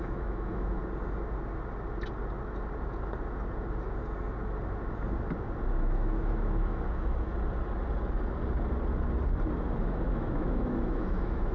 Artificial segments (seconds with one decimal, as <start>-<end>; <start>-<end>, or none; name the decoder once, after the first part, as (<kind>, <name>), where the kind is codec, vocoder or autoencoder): 0.0-0.8 (autoencoder, DAC-VAE); 5.7-7.3; 9.8-11.5